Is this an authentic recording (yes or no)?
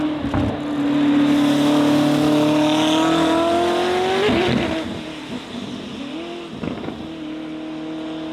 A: yes